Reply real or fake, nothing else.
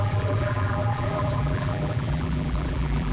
fake